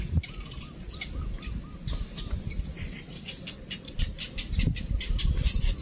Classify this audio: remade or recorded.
recorded